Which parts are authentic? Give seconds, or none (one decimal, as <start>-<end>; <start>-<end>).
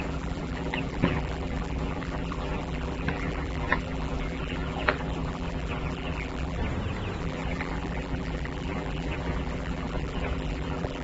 6.6-7.2